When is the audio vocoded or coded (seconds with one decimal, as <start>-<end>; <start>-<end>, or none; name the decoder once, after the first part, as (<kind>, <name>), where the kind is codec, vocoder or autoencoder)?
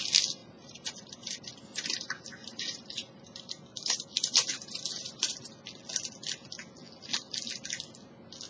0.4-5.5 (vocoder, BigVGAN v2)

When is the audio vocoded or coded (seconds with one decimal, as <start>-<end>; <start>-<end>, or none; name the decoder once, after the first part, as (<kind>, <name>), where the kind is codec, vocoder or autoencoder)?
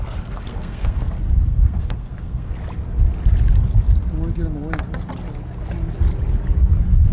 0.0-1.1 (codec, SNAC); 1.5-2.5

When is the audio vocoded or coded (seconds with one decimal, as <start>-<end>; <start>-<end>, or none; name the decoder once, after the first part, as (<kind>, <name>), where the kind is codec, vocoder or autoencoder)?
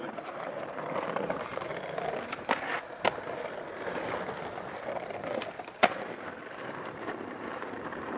0.0-1.7 (vocoder, BigVGAN v2); 5.6-8.2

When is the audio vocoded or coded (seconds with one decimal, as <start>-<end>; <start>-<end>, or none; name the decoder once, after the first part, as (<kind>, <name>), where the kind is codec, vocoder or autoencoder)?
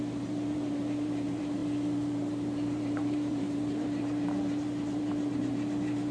0.0-6.1 (vocoder, BigVGAN v2)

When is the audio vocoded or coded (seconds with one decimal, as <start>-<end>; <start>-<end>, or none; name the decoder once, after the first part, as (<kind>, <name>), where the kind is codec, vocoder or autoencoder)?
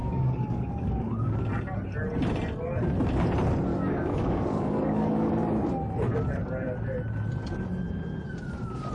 0.0-1.4 (codec, DAC); 3.7-5.3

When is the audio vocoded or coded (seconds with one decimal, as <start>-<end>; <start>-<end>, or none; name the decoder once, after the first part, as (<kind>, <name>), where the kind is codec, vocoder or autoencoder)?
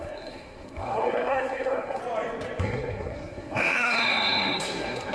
0.0-2.0 (codec, SNAC); 2.6-5.1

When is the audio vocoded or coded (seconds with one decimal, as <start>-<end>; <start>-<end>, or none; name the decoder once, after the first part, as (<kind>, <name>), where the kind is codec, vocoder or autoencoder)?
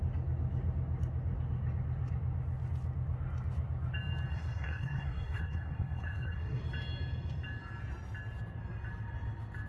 4.3-6.6 (codec, SNAC)